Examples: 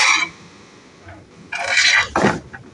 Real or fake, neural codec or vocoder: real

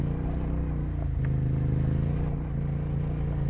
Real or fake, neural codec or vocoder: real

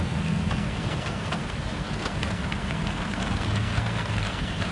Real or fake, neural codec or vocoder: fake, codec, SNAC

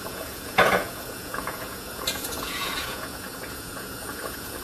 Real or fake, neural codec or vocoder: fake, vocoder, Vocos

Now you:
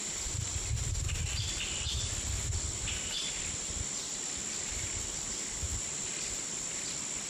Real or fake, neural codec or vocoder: real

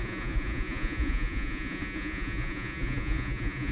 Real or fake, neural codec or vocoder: fake, vocoder, Vocos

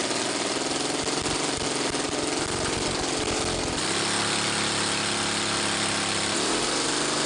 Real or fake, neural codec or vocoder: real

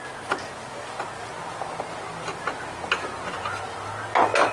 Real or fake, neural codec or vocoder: real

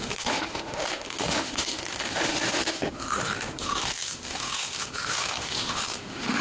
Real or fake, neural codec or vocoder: fake, autoencoder, DAC-VAE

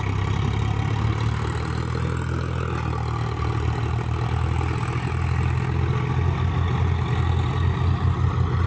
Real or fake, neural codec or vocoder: real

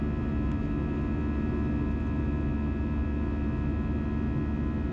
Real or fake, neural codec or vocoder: real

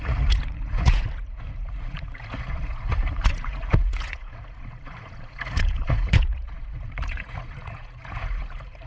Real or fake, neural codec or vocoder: fake, vocoder, Vocos